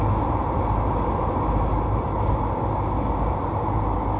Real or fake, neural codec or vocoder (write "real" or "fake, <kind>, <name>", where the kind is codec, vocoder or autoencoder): real